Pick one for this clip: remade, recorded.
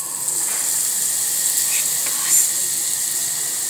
recorded